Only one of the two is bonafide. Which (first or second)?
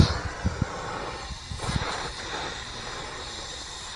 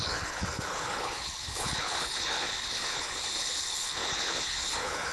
first